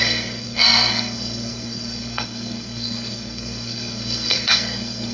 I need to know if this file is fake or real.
fake